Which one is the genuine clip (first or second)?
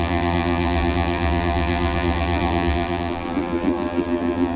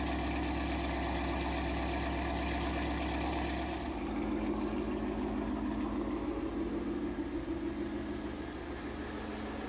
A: second